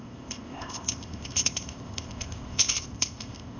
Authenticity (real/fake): fake